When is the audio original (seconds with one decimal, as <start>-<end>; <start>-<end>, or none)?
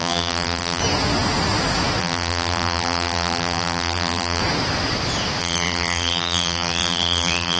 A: 0.8-2.0; 4.4-5.4